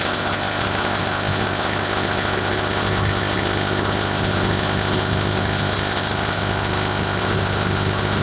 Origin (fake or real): fake